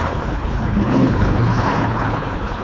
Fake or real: fake